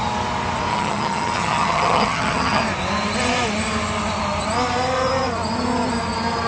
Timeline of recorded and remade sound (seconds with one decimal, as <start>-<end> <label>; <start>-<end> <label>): 0.0-0.7 recorded; 0.7-2.6 remade; 2.6-6.5 recorded